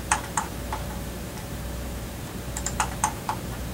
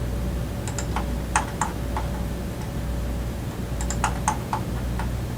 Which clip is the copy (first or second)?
first